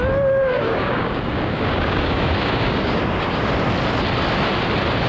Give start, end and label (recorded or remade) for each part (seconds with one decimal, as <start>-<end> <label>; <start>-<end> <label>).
0.0-0.4 recorded; 0.4-3.5 remade; 3.5-5.1 recorded